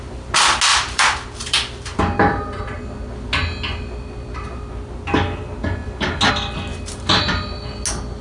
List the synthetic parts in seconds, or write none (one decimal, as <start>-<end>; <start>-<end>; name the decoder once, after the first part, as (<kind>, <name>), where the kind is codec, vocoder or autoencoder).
0.7-2.6 (vocoder, BigVGAN v2); 6.7-7.2